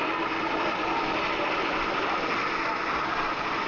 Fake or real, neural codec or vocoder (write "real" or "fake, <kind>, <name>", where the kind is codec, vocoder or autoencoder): real